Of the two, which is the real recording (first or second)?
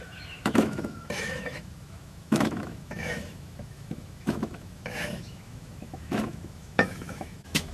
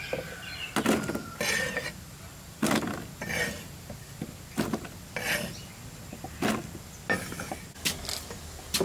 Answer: second